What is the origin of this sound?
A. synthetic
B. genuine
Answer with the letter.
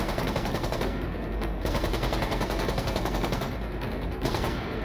A